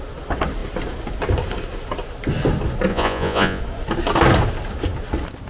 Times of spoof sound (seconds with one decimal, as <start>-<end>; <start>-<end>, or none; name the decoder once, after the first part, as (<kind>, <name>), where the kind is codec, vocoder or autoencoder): 2.9-3.6 (vocoder, Vocos)